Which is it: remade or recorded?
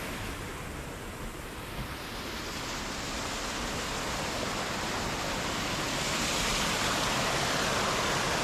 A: recorded